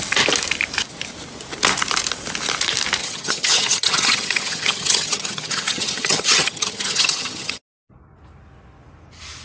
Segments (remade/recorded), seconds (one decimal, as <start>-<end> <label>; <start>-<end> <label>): 0.0-3.0 recorded; 3.0-7.6 remade; 7.6-9.4 recorded